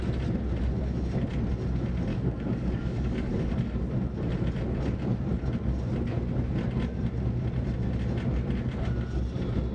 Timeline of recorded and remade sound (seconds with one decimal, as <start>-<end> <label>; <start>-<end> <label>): 0.0-2.1 recorded; 2.1-3.5 remade; 3.5-9.7 recorded